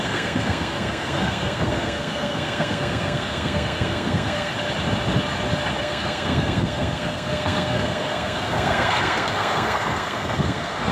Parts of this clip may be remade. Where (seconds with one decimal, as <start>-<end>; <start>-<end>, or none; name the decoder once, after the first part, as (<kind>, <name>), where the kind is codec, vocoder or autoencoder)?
0.0-4.5 (codec, SNAC); 5.8-10.9